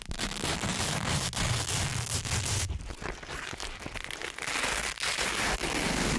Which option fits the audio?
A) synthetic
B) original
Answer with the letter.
B